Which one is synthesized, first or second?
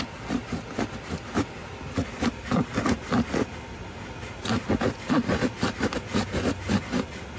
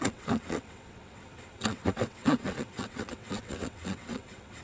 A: second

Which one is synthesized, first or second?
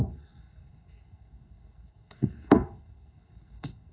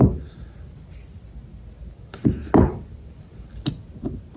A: first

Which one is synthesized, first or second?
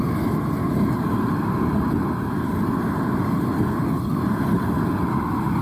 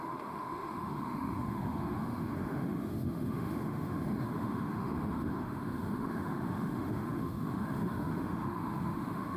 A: second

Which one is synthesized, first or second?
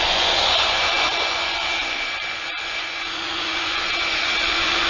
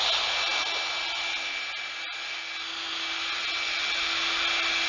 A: first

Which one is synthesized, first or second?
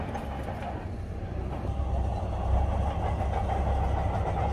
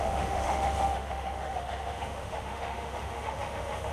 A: second